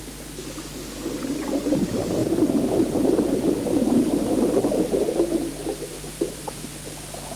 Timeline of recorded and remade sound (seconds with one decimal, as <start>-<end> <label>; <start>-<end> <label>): 0.0-2.2 recorded; 2.2-4.5 remade; 4.5-5.0 recorded; 5.0-6.7 remade; 6.7-7.4 recorded